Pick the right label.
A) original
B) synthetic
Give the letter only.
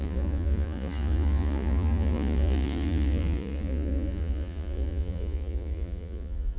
B